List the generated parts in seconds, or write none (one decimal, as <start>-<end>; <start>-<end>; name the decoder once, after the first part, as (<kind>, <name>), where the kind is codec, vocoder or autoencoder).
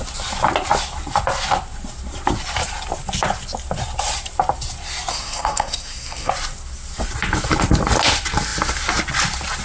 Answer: 5.1-6.3 (codec, SNAC)